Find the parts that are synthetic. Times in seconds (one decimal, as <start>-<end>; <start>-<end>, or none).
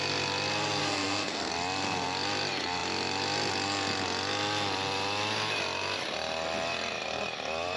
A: 0.8-1.5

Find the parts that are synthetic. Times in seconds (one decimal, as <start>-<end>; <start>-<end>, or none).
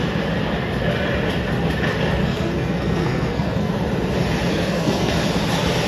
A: 2.2-3.7; 4.5-5.1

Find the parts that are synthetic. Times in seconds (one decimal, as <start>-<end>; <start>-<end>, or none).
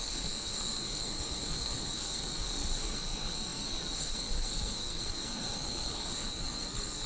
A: 0.0-7.1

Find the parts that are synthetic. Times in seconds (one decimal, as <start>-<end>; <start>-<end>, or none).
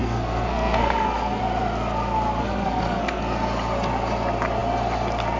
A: 0.0-1.4; 2.4-3.2